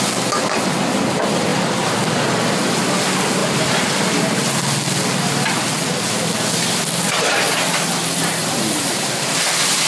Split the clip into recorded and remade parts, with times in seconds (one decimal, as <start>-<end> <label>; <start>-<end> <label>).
0.0-8.4 recorded; 8.4-9.3 remade; 9.3-9.9 recorded